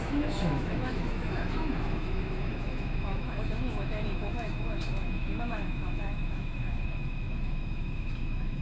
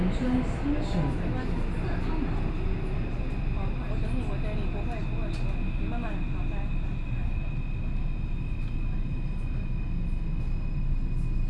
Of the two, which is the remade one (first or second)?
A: first